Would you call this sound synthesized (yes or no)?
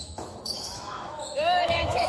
yes